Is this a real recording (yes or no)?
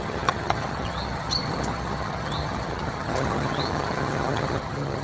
no